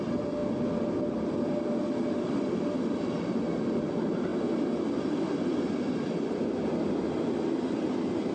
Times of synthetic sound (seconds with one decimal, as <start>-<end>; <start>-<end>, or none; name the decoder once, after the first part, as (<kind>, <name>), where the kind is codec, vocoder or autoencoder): none